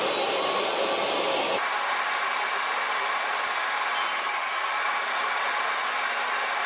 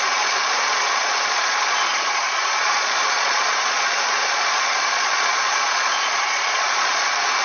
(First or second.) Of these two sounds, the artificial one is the second